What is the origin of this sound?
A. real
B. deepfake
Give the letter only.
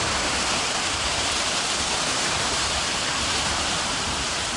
B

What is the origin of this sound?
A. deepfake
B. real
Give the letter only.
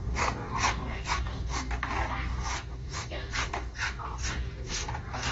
A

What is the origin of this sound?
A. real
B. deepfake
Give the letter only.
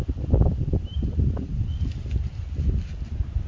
A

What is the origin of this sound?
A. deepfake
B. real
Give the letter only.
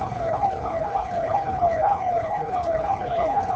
A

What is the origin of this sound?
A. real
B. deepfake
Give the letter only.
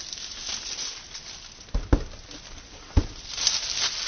A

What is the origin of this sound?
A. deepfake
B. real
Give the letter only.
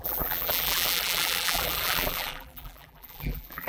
A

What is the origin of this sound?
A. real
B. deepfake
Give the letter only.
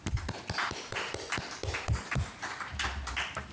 B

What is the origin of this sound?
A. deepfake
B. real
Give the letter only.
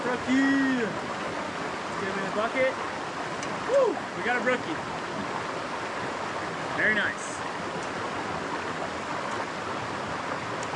B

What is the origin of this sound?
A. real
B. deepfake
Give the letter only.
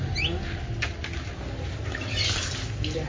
A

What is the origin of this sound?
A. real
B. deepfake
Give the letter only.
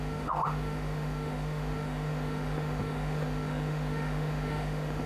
B